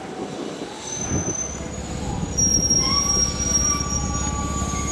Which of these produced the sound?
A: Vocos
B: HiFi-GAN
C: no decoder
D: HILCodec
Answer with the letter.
C